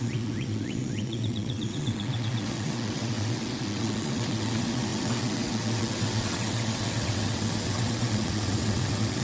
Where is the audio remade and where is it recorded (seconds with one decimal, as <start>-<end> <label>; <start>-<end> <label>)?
0.0-9.2 remade